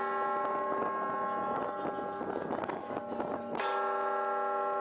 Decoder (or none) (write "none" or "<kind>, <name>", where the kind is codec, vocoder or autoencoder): none